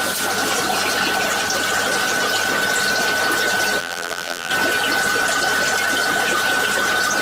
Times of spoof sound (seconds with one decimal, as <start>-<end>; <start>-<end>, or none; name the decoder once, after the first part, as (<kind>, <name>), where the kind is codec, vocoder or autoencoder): 3.8-4.5 (vocoder, BigVGAN v2)